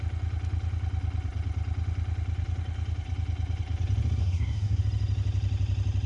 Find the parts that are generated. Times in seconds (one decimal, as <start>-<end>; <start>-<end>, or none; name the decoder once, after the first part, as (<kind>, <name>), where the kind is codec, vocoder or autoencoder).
4.2-4.8 (codec, SNAC)